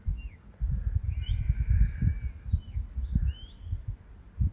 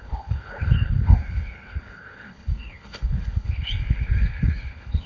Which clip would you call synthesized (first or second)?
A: second